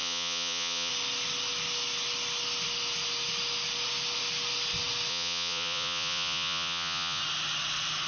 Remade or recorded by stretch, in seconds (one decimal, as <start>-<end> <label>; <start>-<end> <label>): 0.0-0.9 remade; 0.9-5.1 recorded; 5.1-7.2 remade; 7.2-8.1 recorded